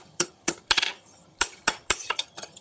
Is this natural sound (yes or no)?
no